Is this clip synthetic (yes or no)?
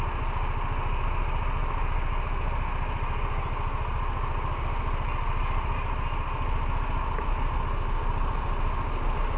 no